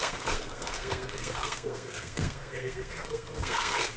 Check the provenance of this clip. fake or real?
fake